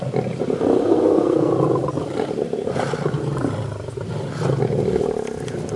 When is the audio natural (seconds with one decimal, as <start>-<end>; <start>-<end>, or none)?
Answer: 0.0-0.8; 1.5-5.8